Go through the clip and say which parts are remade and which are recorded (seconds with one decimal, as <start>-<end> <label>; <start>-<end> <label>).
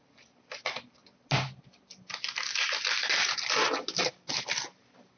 0.0-5.2 recorded